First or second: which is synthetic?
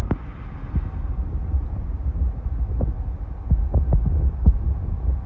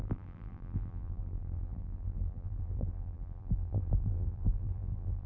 second